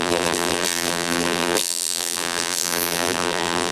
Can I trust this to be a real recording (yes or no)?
no